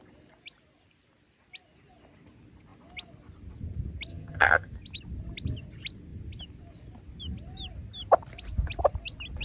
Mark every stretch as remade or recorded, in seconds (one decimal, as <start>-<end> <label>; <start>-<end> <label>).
0.0-4.1 recorded; 4.1-4.7 remade; 4.7-9.4 recorded

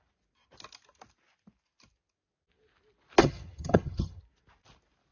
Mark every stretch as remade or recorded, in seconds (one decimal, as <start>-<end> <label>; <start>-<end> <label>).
0.0-3.2 recorded; 3.2-4.2 remade; 4.2-5.1 recorded